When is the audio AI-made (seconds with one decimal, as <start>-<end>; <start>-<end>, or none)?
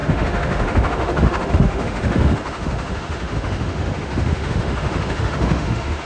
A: 0.0-6.1